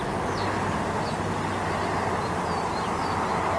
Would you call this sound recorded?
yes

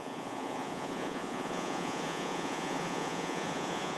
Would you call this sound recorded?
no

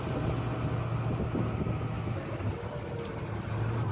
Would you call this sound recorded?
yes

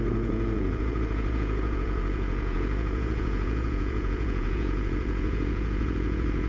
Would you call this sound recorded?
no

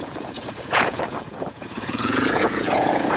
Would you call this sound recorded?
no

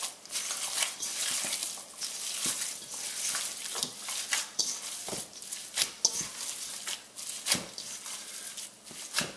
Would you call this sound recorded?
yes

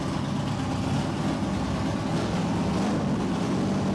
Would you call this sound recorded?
yes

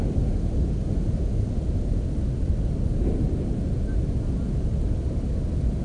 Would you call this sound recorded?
yes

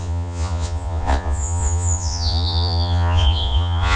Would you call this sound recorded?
no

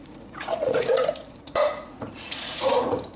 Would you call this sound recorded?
no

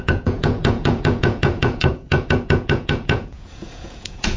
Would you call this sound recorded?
no